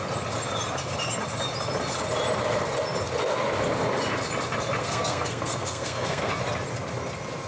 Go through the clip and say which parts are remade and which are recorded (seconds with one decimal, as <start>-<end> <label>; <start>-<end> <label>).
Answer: 0.0-4.8 recorded; 4.8-6.3 remade; 6.3-7.5 recorded